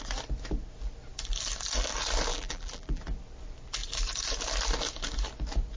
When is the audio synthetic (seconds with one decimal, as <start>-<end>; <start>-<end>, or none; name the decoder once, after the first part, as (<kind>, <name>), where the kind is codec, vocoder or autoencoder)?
2.3-3.0 (vocoder, BigVGAN v2)